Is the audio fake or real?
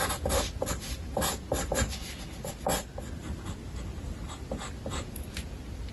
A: real